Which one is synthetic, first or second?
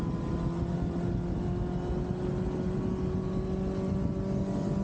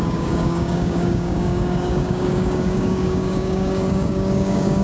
second